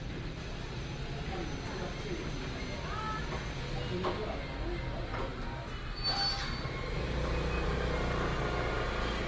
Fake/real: real